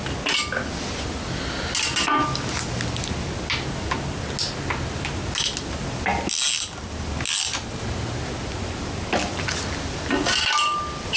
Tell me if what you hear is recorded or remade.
recorded